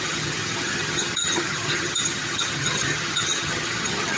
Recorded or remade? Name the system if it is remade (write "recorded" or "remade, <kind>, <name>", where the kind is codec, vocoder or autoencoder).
remade, vocoder, HiFi-GAN